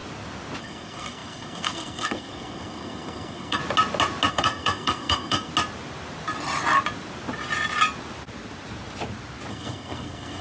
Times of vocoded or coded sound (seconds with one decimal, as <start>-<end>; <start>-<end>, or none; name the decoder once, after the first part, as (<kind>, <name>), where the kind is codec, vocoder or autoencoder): 0.6-3.6 (codec, SNAC); 4.3-5.5; 9.5-10.4